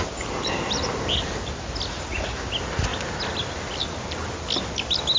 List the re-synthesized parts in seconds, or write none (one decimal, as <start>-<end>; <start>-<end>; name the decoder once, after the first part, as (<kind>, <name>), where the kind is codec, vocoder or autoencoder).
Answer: none